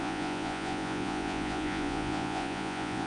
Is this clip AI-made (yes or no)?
yes